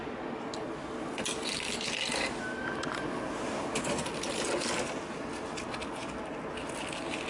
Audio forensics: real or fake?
real